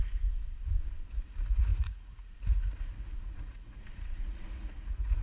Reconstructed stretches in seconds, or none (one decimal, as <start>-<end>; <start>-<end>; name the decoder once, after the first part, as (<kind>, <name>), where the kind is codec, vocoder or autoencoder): 0.0-0.4 (vocoder, Vocos); 1.1-5.2

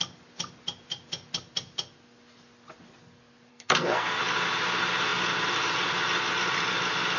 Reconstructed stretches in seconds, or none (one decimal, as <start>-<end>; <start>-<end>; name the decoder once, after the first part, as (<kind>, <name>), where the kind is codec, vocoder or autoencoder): 3.5-4.2 (codec, SNAC)

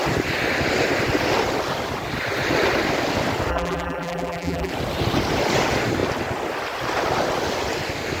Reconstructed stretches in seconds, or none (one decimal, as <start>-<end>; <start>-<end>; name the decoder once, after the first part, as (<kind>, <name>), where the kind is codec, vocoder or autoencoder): 3.5-4.7 (vocoder, BigVGAN v2)

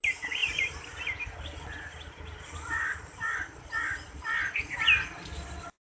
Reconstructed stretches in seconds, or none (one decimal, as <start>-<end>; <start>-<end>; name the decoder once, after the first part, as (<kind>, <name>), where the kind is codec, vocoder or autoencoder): none